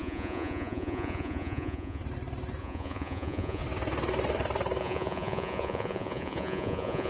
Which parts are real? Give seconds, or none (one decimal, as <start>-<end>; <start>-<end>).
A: 2.0-2.6; 3.6-4.8